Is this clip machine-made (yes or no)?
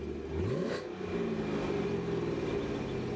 no